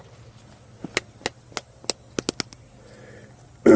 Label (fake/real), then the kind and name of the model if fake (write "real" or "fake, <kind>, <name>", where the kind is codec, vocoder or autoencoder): real